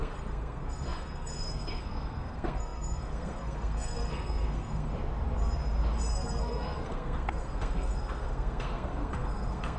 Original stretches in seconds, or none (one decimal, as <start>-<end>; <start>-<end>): 4.9-6.1